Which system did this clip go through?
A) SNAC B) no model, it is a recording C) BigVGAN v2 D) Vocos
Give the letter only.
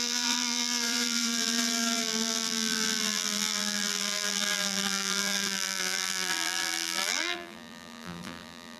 C